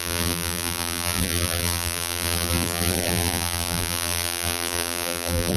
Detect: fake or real fake